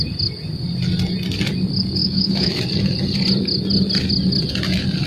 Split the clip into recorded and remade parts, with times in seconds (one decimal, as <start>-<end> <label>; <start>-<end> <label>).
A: 0.0-2.0 recorded; 2.0-2.6 remade; 2.6-5.1 recorded